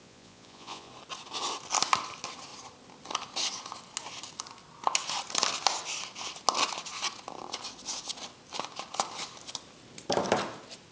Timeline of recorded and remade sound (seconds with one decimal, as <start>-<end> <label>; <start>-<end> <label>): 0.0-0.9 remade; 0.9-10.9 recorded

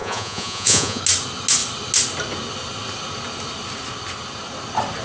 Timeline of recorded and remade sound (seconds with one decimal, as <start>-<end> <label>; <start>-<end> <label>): 0.0-1.0 remade; 1.0-5.0 recorded

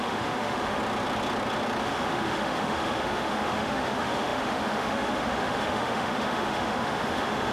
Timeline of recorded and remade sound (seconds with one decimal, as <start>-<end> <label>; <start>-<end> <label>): 0.0-0.8 remade; 0.8-1.8 recorded; 1.8-7.5 remade

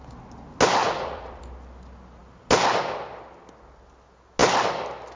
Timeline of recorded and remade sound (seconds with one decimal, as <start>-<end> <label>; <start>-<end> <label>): 0.0-0.8 recorded; 0.8-1.4 remade; 1.4-5.2 recorded

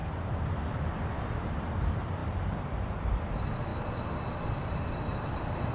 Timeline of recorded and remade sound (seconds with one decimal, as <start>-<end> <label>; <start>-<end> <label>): 0.0-2.2 remade; 2.2-2.9 recorded; 2.9-3.7 remade; 3.7-4.6 recorded; 4.6-5.7 remade